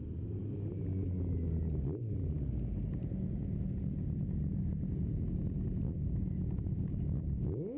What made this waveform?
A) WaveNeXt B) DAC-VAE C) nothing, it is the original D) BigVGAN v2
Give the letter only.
C